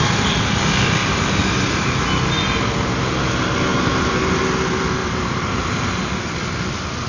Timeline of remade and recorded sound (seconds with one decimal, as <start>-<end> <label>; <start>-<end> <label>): 0.0-1.0 recorded; 1.0-2.0 remade; 2.0-3.7 recorded; 3.7-4.4 remade; 4.4-5.0 recorded; 5.0-6.3 remade; 6.3-7.1 recorded